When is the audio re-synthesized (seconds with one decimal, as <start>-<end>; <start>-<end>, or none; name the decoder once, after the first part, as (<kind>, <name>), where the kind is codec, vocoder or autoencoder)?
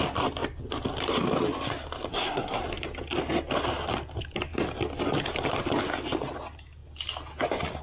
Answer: 2.1-2.6 (codec, SNAC)